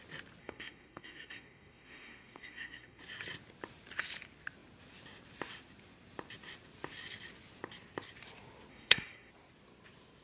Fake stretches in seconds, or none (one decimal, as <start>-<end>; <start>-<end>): 0.4-3.0; 8.7-9.3